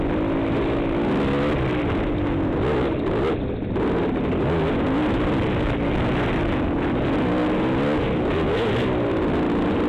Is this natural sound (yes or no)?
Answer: yes